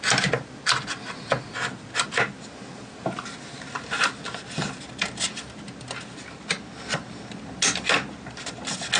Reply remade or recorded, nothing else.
recorded